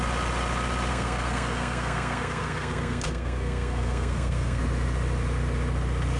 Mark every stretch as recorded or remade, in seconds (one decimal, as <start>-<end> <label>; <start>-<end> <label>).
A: 0.0-0.9 recorded; 0.9-4.6 remade; 4.6-6.2 recorded